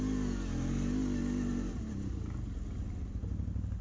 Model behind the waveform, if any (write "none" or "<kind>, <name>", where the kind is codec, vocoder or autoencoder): none